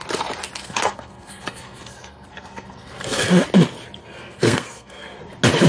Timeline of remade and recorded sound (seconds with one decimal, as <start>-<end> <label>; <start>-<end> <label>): 0.0-0.6 recorded; 0.6-3.3 remade; 3.3-4.0 recorded; 4.0-5.2 remade; 5.2-5.7 recorded